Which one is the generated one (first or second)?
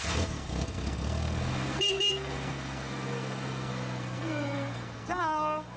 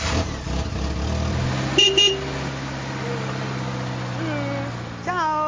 first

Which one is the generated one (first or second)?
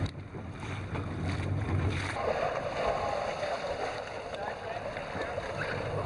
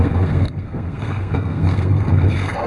second